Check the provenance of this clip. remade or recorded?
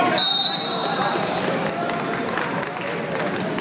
recorded